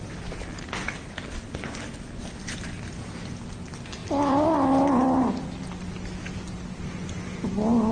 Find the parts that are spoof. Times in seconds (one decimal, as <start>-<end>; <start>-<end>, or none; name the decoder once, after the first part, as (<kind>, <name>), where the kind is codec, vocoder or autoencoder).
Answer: none